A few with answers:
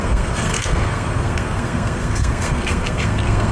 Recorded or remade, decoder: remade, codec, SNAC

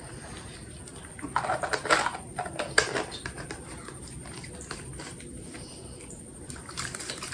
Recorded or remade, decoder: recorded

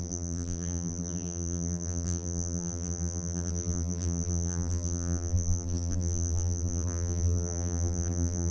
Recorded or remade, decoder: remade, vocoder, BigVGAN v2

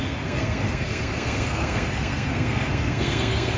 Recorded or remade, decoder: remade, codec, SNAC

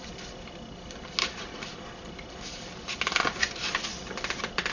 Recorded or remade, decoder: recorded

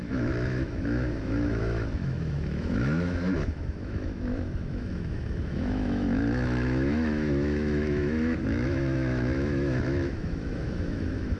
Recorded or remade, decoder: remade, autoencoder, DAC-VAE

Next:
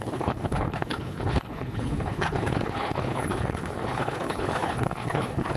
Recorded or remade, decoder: remade, codec, HILCodec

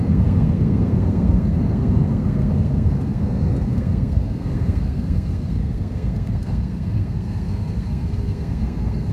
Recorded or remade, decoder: remade, codec, SNAC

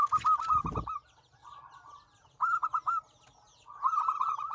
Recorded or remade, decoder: recorded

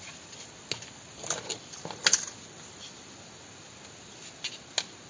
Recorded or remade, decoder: recorded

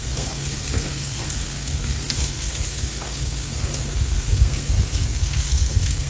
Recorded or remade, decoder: remade, codec, SNAC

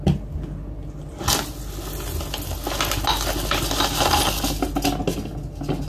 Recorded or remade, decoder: recorded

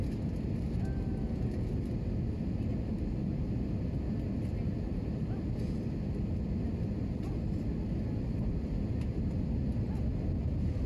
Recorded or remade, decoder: recorded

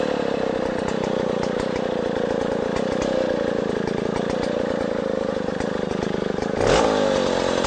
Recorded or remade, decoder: recorded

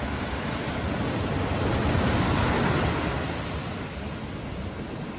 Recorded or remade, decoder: recorded